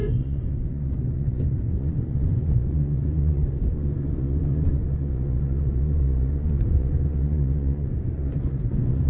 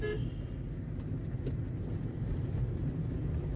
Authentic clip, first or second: second